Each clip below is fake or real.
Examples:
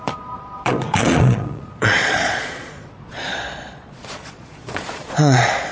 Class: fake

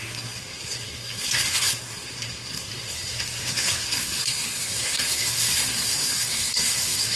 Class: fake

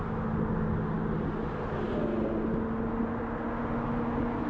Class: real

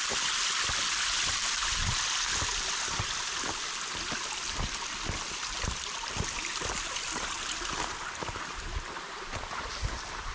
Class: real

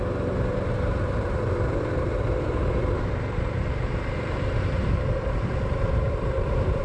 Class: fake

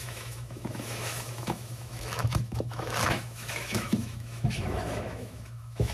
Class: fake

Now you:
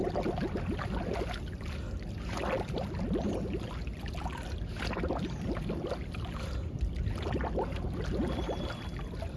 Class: real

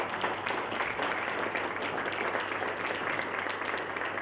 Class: real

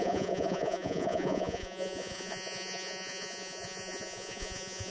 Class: fake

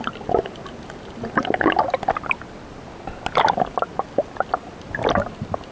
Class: real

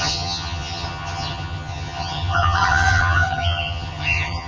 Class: fake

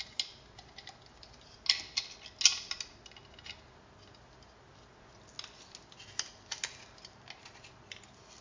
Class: real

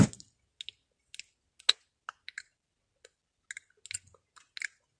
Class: real